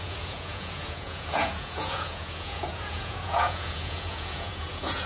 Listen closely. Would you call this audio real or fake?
fake